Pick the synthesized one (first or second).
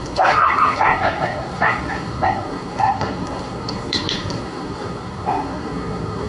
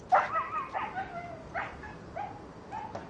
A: first